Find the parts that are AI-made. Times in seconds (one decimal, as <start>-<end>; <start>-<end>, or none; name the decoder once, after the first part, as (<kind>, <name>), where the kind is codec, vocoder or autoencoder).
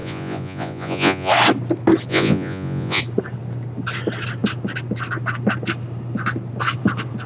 0.0-1.3 (vocoder, Vocos); 2.1-3.0